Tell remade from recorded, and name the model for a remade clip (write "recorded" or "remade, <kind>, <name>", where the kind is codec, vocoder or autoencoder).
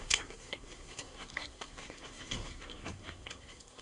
remade, codec, SNAC